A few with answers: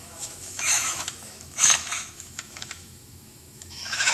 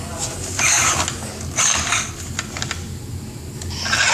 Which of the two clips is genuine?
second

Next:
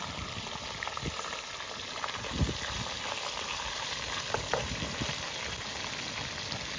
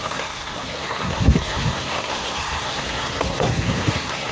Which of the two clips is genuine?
first